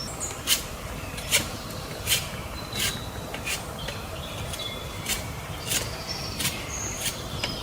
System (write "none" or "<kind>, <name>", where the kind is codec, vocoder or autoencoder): vocoder, BigVGAN v2